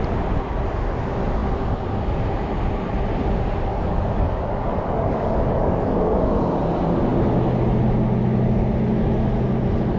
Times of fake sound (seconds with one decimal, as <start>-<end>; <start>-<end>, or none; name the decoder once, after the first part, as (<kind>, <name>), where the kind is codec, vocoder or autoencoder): 3.7-6.3 (codec, DAC)